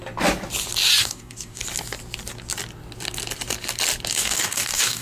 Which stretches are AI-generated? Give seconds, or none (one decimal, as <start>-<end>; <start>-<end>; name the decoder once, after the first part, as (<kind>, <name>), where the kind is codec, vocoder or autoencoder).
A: 1.0-1.6 (codec, DAC); 4.1-5.0